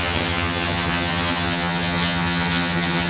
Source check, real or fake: fake